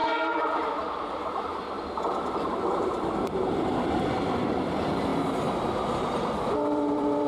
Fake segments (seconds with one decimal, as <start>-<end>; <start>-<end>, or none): 0.0-5.1; 6.0-7.3